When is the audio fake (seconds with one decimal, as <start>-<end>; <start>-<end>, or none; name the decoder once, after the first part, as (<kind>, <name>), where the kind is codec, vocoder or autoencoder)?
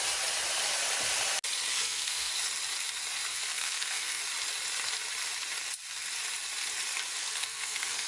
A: 1.7-2.3 (codec, SNAC); 3.3-4.2; 7.2-8.1